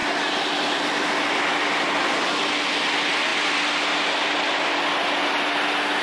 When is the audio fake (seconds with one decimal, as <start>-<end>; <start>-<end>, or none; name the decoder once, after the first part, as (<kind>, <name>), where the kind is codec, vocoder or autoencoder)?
none